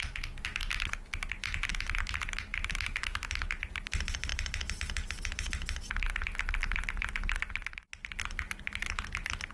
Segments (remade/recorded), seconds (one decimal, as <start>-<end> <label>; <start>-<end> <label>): 0.0-9.5 recorded